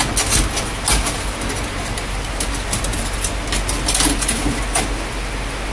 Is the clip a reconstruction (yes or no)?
no